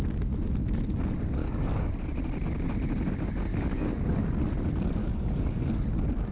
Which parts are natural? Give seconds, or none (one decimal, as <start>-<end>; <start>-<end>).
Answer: 0.0-1.4; 1.9-3.5; 4.3-5.0; 5.7-6.3